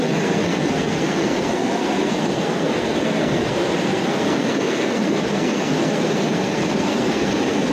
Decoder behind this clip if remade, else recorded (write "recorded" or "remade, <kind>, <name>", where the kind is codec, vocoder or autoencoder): remade, codec, SNAC